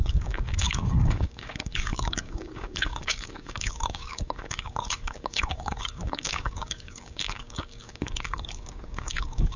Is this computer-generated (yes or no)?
yes